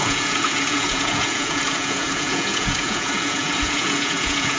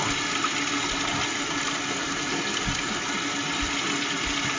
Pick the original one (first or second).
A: second